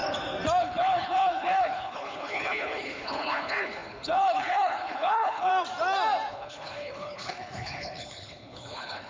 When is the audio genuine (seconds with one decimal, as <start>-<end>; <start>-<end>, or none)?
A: 0.0-0.6; 5.5-6.3